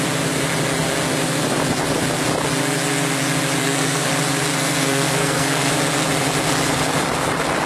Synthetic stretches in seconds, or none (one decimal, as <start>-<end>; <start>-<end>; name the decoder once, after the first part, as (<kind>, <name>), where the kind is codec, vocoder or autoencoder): 3.6-4.1 (codec, SNAC); 4.5-5.7